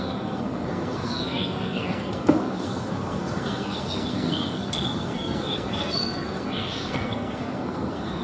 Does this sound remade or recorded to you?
remade